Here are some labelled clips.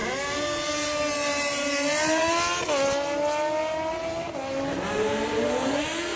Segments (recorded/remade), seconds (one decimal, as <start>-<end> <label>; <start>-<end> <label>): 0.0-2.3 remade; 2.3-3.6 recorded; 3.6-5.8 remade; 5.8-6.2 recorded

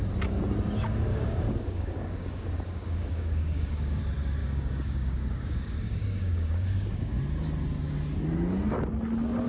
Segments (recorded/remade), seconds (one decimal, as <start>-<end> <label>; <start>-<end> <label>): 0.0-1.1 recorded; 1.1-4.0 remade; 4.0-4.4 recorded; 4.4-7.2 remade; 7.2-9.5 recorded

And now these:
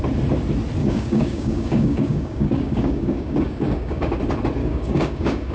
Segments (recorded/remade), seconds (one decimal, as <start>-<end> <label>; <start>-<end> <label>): 0.0-0.8 recorded; 0.8-4.1 remade; 4.1-4.6 recorded; 4.6-5.5 remade

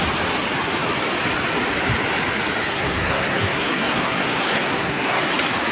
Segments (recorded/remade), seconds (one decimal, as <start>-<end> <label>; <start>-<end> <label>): 0.0-2.7 recorded; 2.7-5.2 remade; 5.2-5.7 recorded

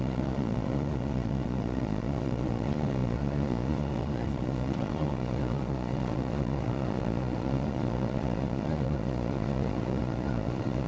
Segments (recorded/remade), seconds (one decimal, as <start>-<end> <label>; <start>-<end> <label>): 0.0-10.9 remade

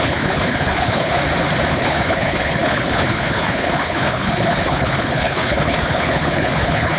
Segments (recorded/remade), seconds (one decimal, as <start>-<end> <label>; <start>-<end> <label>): 0.0-1.2 remade; 1.2-1.7 recorded; 1.7-7.0 remade

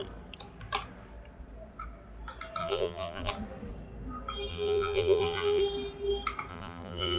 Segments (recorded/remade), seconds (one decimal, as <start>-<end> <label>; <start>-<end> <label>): 0.0-2.6 recorded; 2.6-3.3 remade; 3.3-4.5 recorded; 4.5-5.6 remade; 5.6-6.5 recorded; 6.5-7.2 remade

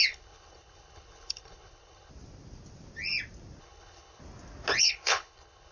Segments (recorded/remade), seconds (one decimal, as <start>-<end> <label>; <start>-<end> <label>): 0.0-2.1 remade; 2.1-3.6 recorded; 3.6-4.2 remade; 4.2-4.8 recorded; 4.8-5.7 remade